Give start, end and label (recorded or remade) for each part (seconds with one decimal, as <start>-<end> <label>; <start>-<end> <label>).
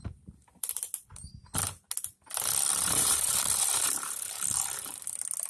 0.0-0.7 remade; 0.7-2.7 recorded; 2.7-4.3 remade; 4.3-5.5 recorded